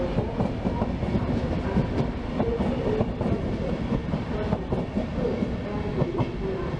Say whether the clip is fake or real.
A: real